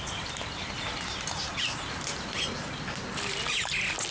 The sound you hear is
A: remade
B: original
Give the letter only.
B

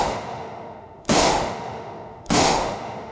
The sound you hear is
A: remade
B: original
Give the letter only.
A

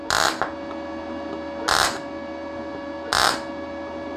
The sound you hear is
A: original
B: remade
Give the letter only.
A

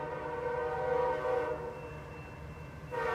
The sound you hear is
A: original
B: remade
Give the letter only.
A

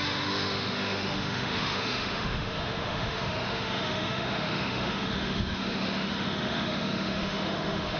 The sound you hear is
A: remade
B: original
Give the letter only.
A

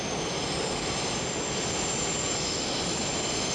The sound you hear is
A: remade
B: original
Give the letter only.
B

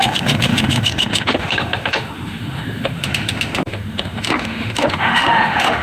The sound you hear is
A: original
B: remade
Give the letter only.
B